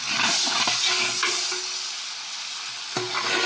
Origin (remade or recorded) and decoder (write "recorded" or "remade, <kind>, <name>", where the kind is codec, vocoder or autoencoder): recorded